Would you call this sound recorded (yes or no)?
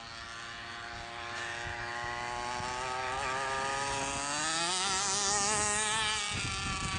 yes